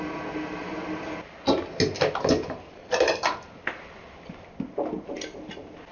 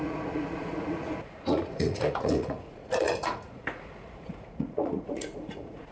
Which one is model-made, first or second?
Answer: second